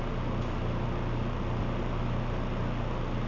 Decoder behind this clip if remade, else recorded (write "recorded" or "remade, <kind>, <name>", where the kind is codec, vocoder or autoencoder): recorded